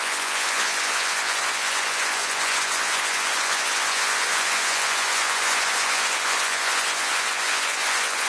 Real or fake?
fake